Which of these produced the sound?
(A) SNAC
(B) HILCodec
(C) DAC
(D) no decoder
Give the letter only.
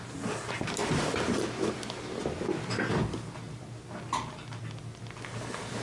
D